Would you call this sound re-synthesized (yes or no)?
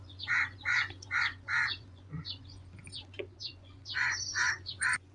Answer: yes